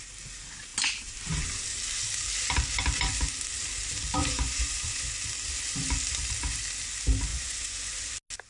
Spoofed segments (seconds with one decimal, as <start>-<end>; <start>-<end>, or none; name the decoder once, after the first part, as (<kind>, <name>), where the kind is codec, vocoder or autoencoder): 4.2-5.1 (vocoder, Vocos); 7.3-8.1

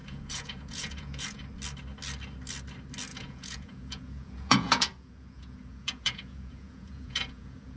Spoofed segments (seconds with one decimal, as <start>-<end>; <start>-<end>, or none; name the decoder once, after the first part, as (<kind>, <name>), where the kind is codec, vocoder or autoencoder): 0.0-1.4 (vocoder, Vocos); 3.1-7.8

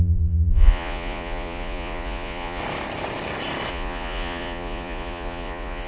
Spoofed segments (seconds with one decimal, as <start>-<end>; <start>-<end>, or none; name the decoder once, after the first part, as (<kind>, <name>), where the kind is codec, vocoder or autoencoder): 0.0-2.6 (vocoder, Vocos); 3.7-5.9

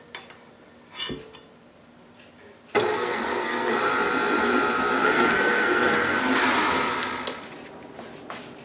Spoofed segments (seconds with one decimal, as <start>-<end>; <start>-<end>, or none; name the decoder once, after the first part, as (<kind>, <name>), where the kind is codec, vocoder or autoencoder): 2.9-3.7 (codec, SNAC); 5.0-6.2

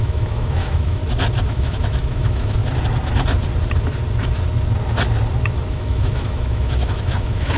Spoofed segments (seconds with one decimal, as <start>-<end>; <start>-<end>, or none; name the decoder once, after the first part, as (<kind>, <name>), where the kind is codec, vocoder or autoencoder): 0.0-1.0 (autoencoder, DAC-VAE); 1.5-2.6; 5.7-7.6